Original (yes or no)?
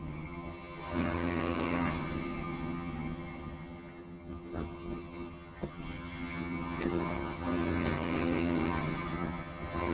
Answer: no